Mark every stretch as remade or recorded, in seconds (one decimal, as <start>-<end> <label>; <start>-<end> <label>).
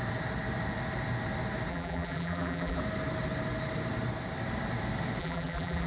0.0-1.7 recorded; 1.7-2.8 remade; 2.8-5.2 recorded; 5.2-5.9 remade